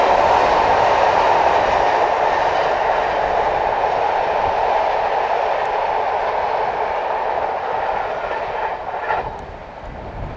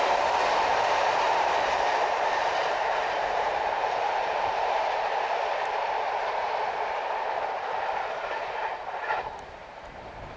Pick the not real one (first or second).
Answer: second